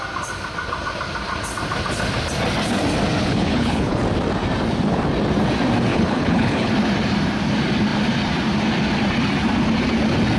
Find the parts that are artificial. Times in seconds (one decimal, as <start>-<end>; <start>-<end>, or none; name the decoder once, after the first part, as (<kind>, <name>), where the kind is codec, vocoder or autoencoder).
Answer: 3.2-4.0 (codec, HILCodec); 5.9-6.7